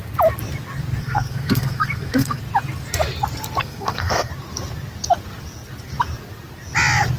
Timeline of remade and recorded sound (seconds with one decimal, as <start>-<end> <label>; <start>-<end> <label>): 0.0-1.0 recorded; 1.0-2.4 remade; 2.4-3.6 recorded; 3.6-4.3 remade; 4.3-7.2 recorded